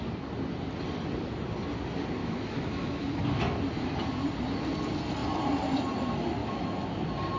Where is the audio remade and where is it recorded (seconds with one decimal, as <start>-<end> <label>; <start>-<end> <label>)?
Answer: 0.0-2.2 recorded; 2.2-3.2 remade; 3.2-6.4 recorded; 6.4-6.9 remade; 6.9-7.4 recorded